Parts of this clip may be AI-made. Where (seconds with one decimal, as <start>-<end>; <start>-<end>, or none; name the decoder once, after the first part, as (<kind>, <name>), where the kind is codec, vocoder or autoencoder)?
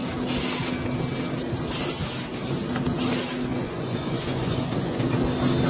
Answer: 3.5-5.1 (vocoder, Vocos)